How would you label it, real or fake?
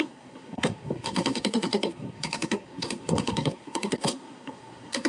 fake